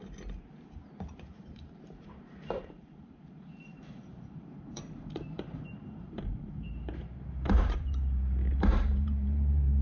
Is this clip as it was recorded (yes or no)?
no